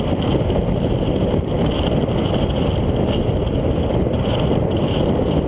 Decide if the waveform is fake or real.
real